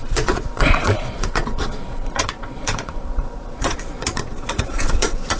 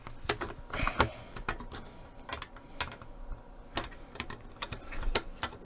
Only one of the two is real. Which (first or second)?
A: second